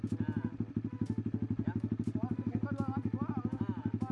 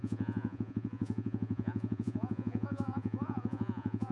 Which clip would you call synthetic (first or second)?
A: second